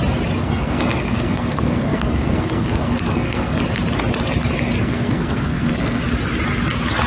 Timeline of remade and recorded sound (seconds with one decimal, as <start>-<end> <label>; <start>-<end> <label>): 0.0-0.4 recorded; 0.4-3.6 remade; 3.6-4.8 recorded; 4.8-6.0 remade; 6.0-7.1 recorded